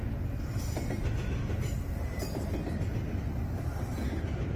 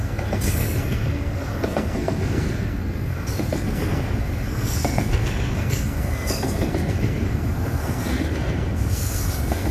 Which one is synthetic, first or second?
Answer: second